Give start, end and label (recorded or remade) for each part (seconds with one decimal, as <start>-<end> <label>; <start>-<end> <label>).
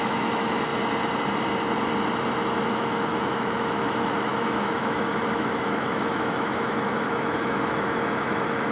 0.0-0.7 remade; 0.7-2.7 recorded; 2.7-8.7 remade